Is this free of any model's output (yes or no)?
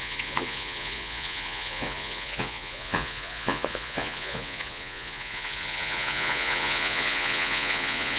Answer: no